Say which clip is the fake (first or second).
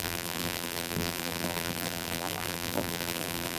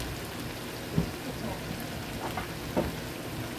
first